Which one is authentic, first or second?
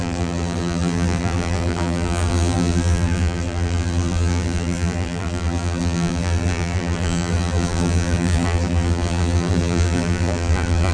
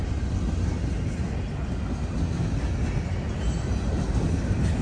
second